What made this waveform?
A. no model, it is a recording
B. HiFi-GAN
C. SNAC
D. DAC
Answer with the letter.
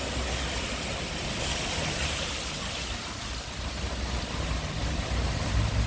A